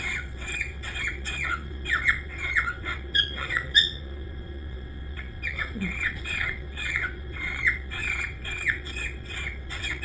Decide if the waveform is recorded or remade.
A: remade